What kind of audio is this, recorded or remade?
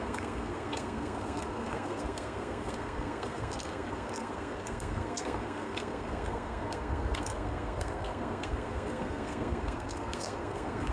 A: remade